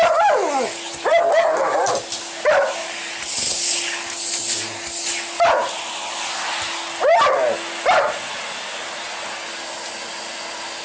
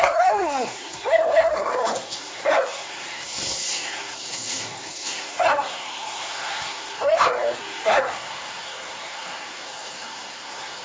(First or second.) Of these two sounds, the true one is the first